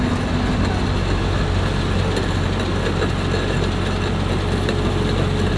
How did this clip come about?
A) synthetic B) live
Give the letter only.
B